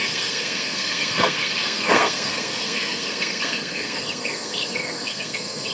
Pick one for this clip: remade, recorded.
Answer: remade